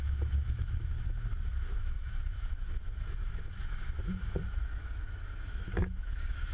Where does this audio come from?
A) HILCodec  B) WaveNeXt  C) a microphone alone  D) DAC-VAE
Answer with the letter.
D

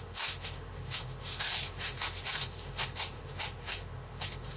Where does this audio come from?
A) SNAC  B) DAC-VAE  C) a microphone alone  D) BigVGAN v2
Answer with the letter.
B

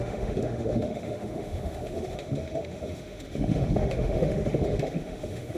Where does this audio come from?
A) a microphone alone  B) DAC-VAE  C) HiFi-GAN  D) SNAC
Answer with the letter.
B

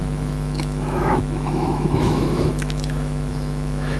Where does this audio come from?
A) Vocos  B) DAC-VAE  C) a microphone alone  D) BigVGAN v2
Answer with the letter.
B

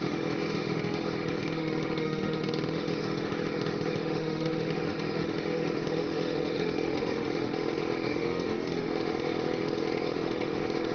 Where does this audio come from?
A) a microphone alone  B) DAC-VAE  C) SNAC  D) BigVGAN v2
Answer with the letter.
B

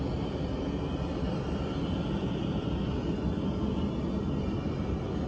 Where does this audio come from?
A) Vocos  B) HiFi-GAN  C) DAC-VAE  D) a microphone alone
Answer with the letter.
D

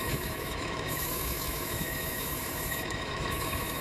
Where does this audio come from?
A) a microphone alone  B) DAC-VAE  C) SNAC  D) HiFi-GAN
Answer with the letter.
B